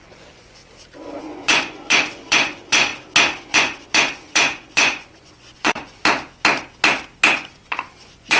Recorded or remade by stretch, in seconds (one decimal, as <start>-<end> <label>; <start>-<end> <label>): 0.0-0.6 remade; 0.6-1.2 recorded; 1.2-2.9 remade; 2.9-3.4 recorded; 3.4-6.0 remade; 6.0-7.3 recorded; 7.3-8.4 remade